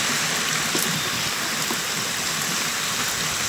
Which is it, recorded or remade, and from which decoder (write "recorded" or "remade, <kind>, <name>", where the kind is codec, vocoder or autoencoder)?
recorded